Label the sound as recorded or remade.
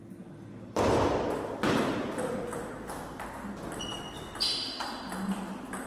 recorded